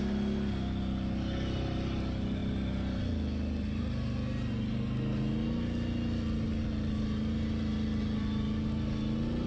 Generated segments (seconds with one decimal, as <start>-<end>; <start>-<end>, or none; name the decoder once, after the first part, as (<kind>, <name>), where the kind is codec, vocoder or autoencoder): none